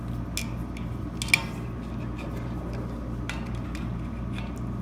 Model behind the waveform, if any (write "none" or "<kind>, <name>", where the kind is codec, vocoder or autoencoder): none